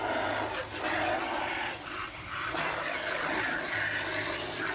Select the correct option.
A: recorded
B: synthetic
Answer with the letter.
B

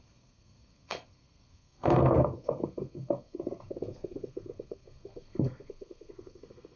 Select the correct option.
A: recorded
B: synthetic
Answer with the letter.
B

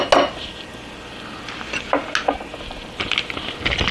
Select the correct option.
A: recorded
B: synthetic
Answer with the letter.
A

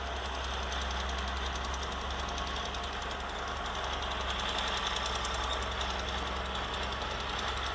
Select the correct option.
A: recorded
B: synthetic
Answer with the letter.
A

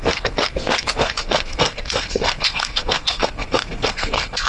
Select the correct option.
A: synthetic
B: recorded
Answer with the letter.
A